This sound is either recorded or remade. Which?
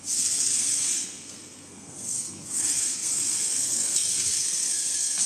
remade